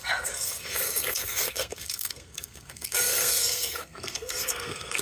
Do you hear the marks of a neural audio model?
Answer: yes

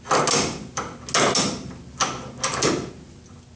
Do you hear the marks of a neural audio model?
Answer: no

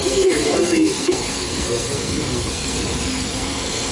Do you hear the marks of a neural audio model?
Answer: yes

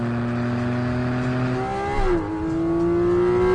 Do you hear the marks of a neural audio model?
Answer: no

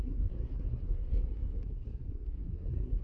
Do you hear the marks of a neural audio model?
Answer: yes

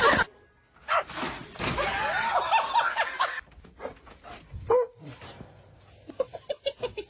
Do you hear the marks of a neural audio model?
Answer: no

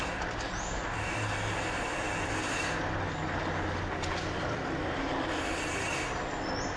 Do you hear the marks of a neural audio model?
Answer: no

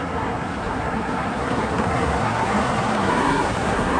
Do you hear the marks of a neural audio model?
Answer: yes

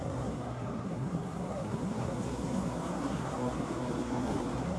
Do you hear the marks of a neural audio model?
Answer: yes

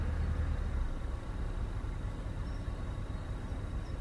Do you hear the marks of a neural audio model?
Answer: no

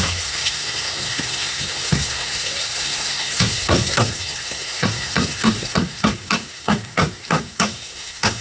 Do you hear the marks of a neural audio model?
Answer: yes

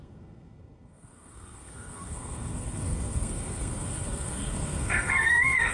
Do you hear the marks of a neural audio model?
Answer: yes